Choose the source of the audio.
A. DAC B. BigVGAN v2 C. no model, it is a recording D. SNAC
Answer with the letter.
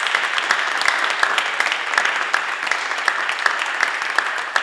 C